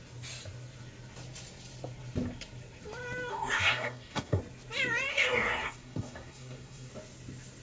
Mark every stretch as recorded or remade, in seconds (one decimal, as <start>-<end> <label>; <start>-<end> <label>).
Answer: 0.0-3.3 recorded; 3.3-4.4 remade; 4.4-5.1 recorded; 5.1-6.9 remade; 6.9-7.6 recorded

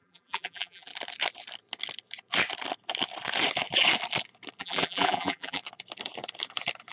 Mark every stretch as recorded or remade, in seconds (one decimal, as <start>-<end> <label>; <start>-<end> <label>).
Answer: 0.0-0.9 remade; 0.9-4.6 recorded; 4.6-5.6 remade; 5.6-6.9 recorded